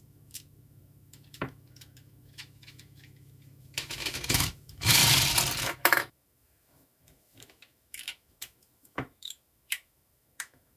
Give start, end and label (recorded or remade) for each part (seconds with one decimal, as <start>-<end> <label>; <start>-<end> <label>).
0.0-5.0 remade; 5.0-5.6 recorded; 5.6-10.8 remade

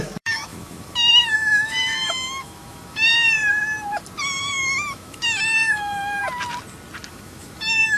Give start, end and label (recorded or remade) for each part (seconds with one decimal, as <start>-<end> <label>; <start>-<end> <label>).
0.0-3.1 remade; 3.1-4.4 recorded; 4.4-6.2 remade; 6.2-7.1 recorded; 7.1-8.0 remade

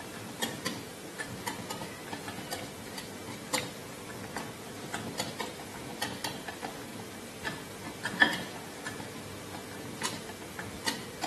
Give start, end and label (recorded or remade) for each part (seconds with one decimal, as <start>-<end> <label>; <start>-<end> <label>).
0.0-11.3 recorded

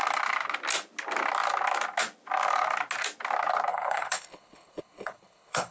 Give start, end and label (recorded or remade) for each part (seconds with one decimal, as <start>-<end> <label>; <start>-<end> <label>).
0.0-3.7 recorded; 3.7-5.7 remade

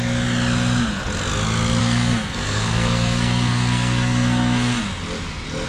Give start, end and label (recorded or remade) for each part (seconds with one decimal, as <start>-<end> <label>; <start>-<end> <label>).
0.0-1.8 recorded; 1.8-4.8 remade; 4.8-5.7 recorded